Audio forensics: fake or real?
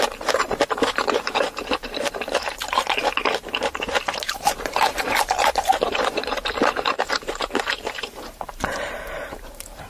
fake